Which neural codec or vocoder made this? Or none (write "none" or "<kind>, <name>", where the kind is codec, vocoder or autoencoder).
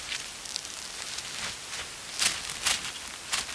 none